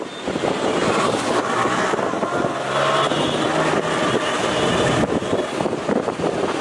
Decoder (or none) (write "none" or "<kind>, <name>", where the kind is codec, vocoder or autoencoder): none